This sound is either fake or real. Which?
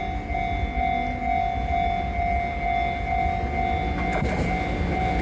real